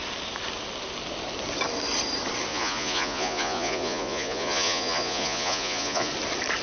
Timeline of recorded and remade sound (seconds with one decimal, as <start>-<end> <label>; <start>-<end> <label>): 0.0-2.5 recorded; 2.5-6.1 remade; 6.1-6.6 recorded